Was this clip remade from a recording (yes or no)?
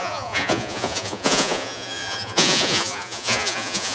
yes